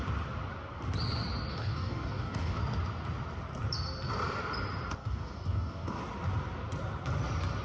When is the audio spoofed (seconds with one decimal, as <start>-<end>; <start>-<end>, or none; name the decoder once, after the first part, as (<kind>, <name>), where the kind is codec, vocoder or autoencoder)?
1.5-2.6 (codec, DAC); 5.0-6.0